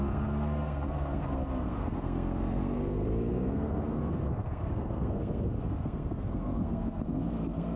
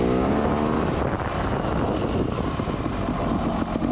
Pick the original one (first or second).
second